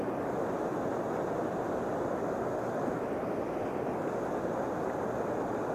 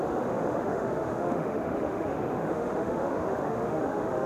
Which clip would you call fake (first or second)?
second